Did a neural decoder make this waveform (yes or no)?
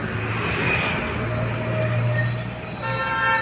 no